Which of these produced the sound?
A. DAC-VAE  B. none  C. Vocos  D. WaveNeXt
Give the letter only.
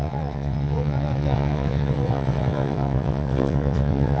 D